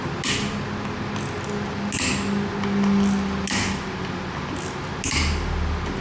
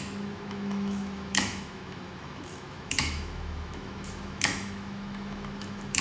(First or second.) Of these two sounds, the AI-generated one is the second